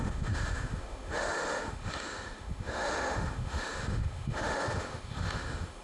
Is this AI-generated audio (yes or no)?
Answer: yes